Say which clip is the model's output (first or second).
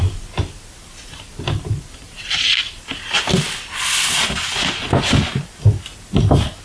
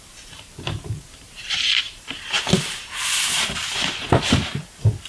second